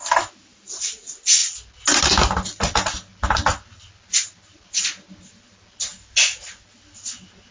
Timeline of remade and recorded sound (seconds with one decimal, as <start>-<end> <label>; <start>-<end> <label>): 0.0-7.5 recorded